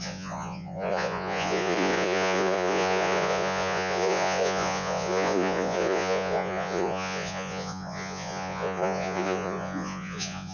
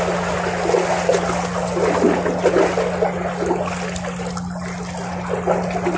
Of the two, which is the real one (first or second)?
second